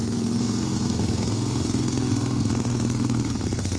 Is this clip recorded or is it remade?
remade